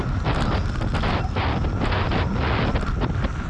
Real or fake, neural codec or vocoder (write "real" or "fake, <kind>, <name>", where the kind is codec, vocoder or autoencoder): real